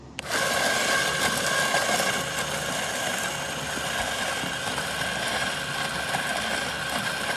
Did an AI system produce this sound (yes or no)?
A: no